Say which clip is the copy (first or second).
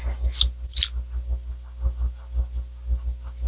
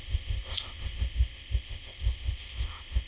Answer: second